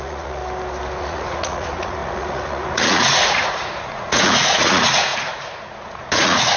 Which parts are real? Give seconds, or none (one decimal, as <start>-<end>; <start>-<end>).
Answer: 0.4-1.0

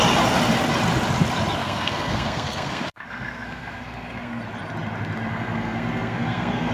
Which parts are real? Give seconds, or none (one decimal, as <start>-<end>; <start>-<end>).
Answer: 0.0-1.6; 4.4-5.3

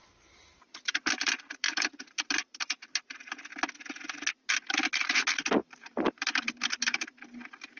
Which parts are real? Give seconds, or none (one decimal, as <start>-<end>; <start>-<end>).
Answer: 2.9-5.6; 7.2-7.8

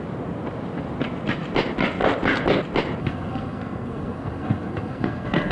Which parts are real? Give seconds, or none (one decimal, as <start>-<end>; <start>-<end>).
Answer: 0.0-3.0

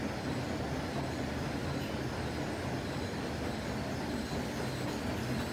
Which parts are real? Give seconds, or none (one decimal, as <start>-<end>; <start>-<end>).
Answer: 0.0-5.5

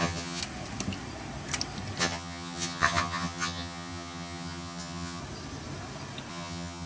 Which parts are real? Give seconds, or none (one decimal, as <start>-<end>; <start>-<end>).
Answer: 0.4-2.0; 5.2-6.3